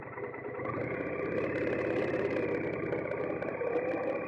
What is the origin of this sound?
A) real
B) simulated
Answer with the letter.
B